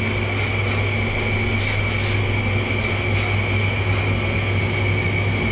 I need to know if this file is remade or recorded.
recorded